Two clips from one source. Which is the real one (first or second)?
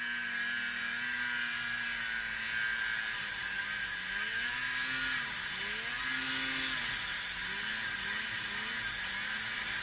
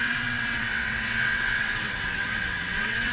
first